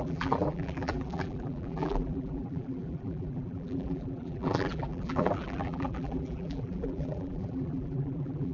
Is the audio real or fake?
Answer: fake